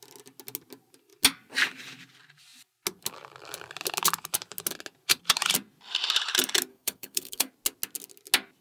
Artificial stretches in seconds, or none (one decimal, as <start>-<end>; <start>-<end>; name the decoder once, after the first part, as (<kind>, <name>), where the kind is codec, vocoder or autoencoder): 6.7-7.5 (codec, SNAC)